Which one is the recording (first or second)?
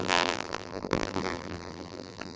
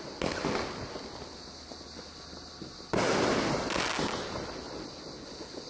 second